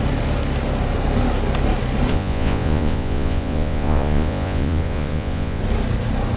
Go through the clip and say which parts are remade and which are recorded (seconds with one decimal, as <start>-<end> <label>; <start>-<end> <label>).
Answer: 0.0-2.1 recorded; 2.1-5.6 remade; 5.6-6.4 recorded